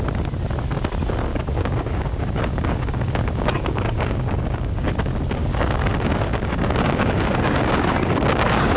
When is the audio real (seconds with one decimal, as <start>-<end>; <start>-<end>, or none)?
0.0-1.3; 4.9-5.4